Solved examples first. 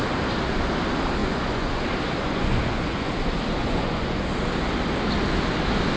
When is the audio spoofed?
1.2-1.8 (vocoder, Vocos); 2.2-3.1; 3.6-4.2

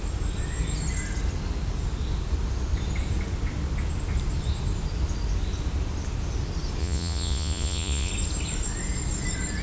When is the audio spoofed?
6.8-8.1 (vocoder, Vocos)